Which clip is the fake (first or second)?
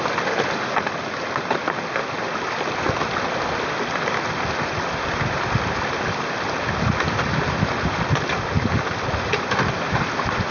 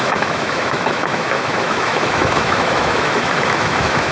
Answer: second